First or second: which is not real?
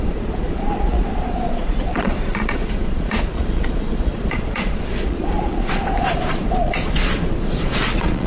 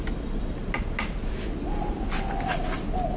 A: first